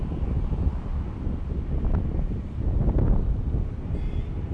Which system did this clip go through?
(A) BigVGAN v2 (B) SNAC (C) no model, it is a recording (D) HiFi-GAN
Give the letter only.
C